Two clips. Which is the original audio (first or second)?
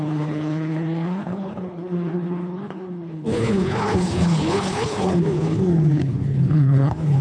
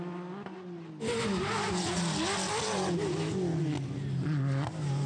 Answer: second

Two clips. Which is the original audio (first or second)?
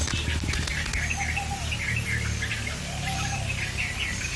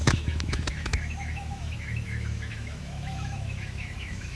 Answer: first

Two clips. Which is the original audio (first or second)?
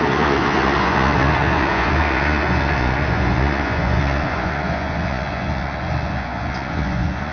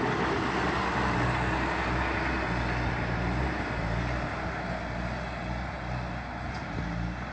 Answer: second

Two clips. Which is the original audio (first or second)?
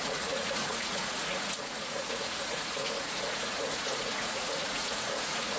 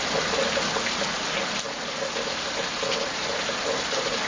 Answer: second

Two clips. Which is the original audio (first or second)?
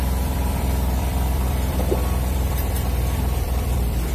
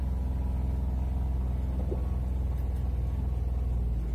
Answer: second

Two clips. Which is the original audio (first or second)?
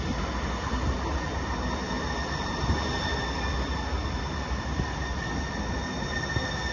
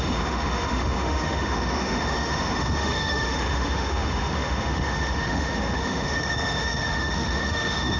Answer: first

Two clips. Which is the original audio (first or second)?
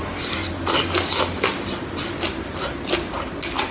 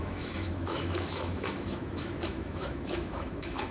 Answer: first